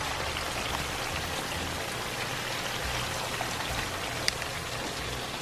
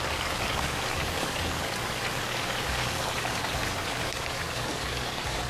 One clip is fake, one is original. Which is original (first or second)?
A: first